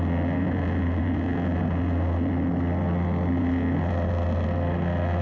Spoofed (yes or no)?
no